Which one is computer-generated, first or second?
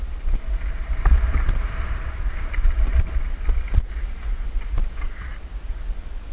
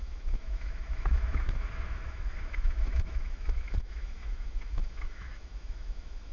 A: second